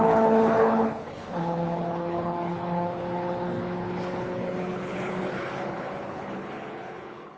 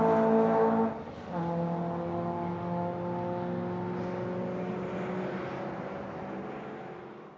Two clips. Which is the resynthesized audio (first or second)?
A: first